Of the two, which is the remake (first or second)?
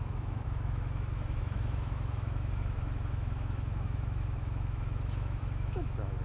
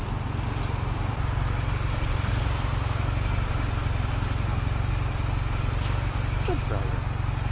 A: first